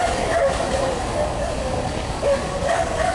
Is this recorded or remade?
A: remade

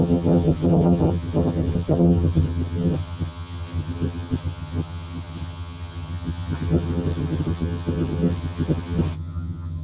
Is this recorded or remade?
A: remade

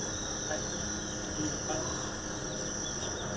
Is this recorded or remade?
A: recorded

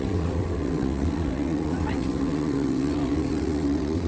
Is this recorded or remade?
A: remade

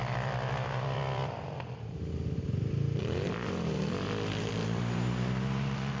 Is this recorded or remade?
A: remade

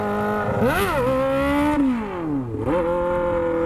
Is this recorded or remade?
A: recorded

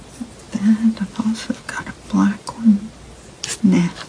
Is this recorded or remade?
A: recorded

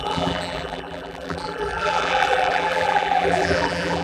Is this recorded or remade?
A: remade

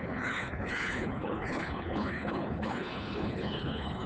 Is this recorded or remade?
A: remade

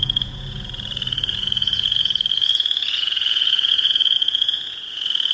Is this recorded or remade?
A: remade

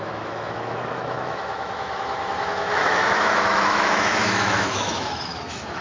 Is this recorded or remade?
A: remade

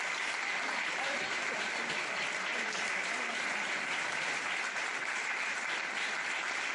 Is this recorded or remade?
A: recorded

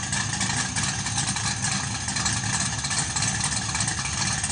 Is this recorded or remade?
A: recorded